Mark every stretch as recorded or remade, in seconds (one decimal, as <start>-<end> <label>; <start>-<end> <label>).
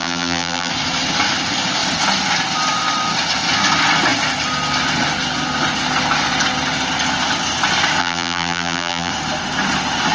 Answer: 0.0-0.7 remade; 0.7-8.0 recorded; 8.0-9.1 remade; 9.1-10.1 recorded